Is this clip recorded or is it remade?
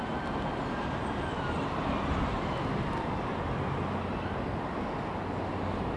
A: recorded